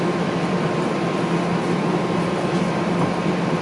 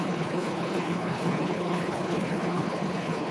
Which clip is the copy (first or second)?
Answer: second